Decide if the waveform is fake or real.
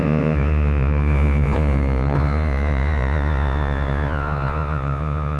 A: fake